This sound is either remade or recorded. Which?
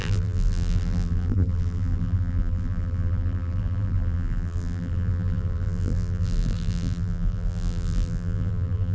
remade